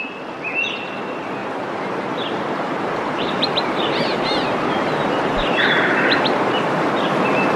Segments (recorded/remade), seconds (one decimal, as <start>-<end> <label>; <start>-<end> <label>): 0.0-1.4 recorded; 1.4-5.6 remade; 5.6-7.6 recorded